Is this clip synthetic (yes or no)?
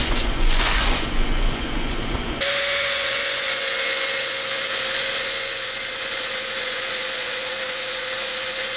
yes